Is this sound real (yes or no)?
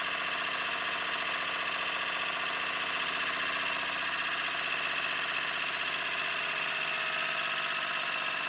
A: yes